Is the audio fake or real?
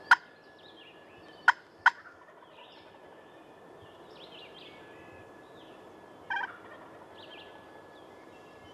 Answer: real